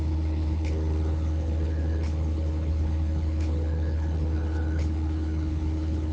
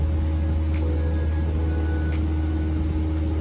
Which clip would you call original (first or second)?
second